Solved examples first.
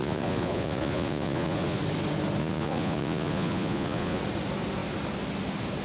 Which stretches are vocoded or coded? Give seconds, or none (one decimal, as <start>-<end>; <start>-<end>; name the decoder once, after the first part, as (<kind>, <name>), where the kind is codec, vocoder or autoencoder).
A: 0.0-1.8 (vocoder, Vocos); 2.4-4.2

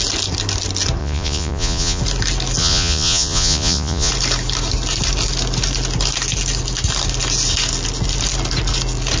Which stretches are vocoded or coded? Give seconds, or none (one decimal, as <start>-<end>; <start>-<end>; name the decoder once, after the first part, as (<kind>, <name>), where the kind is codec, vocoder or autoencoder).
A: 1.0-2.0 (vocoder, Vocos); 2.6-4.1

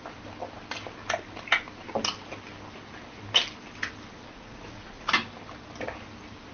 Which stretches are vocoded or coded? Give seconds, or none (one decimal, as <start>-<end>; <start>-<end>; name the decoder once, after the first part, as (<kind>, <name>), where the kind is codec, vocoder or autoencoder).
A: 4.3-5.1 (vocoder, Vocos)

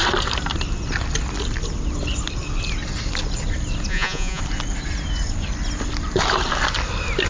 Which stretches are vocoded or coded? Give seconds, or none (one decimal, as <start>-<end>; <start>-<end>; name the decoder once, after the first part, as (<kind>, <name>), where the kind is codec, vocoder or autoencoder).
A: 3.9-4.4 (vocoder, Vocos)

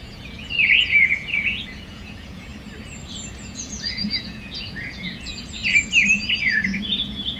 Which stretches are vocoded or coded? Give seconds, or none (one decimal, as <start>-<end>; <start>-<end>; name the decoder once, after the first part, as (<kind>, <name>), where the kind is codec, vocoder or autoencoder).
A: 0.0-2.5 (vocoder, Vocos); 3.4-5.6; 6.4-7.4

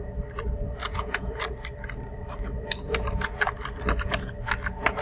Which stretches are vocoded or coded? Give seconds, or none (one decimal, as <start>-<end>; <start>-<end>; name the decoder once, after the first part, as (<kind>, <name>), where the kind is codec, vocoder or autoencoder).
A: 0.8-1.3 (vocoder, Vocos)